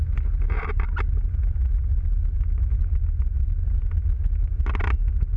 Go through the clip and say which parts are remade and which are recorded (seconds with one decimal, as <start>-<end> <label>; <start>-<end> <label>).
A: 0.0-5.4 recorded